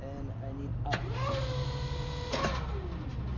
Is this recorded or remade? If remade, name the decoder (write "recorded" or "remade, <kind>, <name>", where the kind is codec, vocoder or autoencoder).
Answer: recorded